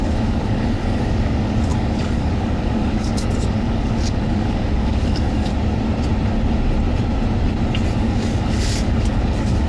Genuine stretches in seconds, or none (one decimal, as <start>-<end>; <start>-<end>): 5.5-8.0